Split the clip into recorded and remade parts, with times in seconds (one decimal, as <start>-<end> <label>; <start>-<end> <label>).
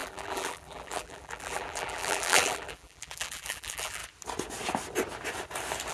0.0-4.0 remade; 4.0-5.9 recorded